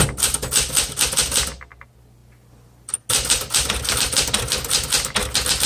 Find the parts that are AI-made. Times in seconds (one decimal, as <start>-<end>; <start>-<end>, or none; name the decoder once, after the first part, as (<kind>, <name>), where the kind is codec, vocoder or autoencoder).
none